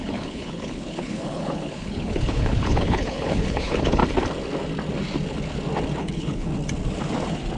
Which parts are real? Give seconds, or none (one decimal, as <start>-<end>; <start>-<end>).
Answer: 4.0-6.0; 6.5-7.6